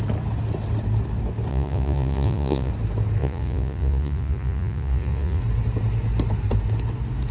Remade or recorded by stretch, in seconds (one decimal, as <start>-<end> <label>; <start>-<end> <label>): 0.0-1.5 recorded; 1.5-2.7 remade; 2.7-3.2 recorded; 3.2-5.4 remade; 5.4-7.3 recorded